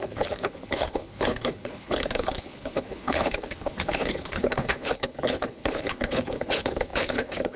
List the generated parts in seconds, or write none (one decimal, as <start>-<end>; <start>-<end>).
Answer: 0.0-7.6

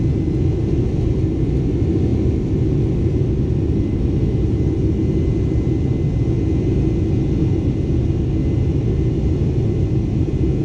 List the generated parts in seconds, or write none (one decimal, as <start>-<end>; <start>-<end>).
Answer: none

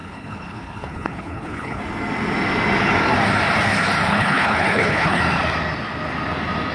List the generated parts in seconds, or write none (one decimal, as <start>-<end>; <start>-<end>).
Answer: 0.0-1.8; 4.1-5.2

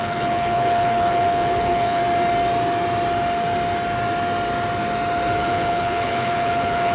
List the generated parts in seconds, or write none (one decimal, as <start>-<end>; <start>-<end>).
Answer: 0.0-2.0; 5.4-6.9

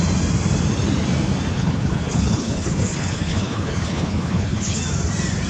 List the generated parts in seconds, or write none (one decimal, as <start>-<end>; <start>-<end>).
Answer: 1.5-4.8

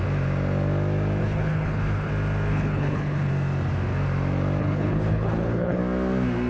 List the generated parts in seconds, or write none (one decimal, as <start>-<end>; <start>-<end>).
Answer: 1.2-2.1; 2.5-3.3; 4.6-5.8